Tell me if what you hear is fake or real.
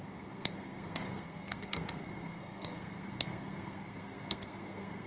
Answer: fake